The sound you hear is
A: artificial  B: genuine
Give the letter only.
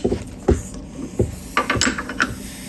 B